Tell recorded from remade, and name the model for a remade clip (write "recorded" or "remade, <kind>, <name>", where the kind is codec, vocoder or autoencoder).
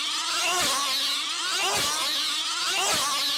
recorded